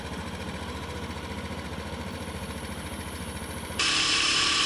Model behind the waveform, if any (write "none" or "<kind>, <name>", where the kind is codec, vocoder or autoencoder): vocoder, BigVGAN v2